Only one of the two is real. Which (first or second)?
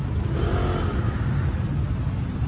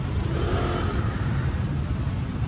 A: first